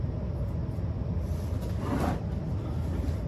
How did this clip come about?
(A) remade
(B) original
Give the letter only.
B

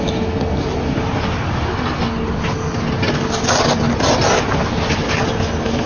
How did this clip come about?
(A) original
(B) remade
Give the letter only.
A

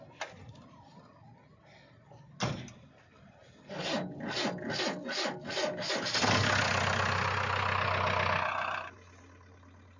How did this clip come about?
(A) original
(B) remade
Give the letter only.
A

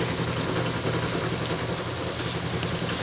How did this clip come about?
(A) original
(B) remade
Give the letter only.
A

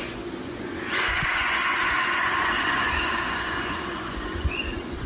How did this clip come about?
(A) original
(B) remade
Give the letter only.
B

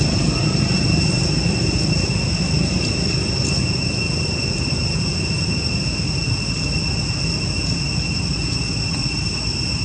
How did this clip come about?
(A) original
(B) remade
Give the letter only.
A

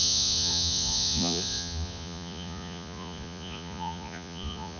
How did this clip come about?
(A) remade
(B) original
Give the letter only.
A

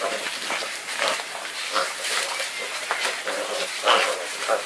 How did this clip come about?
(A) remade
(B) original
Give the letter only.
B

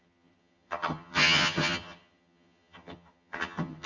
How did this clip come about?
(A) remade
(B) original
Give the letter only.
A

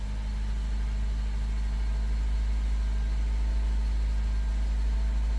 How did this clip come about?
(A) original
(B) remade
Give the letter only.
A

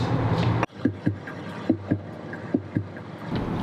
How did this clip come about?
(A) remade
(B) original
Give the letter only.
B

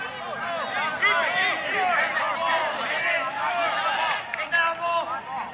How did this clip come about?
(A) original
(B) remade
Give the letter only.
A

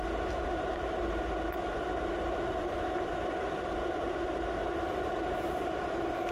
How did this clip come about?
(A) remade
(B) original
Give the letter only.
B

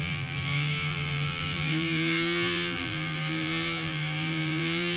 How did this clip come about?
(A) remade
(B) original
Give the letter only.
A